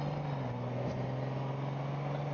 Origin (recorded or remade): recorded